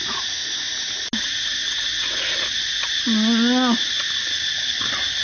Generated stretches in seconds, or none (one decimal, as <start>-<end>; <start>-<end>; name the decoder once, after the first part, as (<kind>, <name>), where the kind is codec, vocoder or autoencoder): none